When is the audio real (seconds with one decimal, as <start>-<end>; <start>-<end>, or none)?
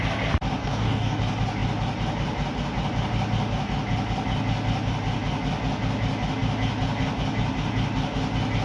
0.0-0.6; 1.2-8.6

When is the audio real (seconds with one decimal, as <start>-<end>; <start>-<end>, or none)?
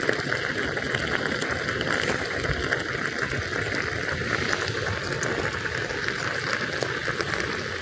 0.0-7.8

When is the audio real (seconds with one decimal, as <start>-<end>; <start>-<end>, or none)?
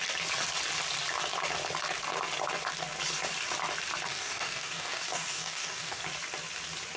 0.0-4.1; 6.0-7.0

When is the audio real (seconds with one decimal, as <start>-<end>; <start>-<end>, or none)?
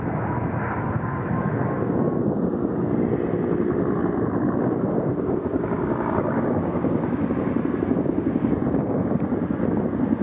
0.0-5.1; 7.2-10.2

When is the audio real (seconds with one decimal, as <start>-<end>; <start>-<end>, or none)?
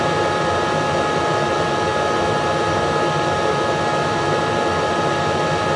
0.0-5.8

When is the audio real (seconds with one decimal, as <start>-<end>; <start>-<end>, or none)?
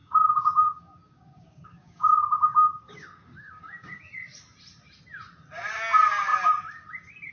4.0-7.3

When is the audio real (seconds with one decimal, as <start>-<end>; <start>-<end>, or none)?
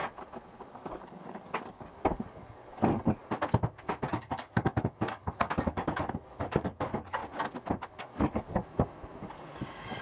0.0-0.7; 3.2-4.1; 7.2-8.0; 8.6-9.2